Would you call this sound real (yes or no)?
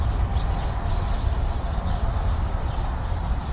yes